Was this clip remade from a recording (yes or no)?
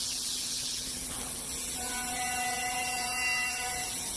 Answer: yes